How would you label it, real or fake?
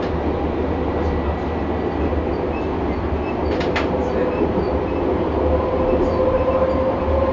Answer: real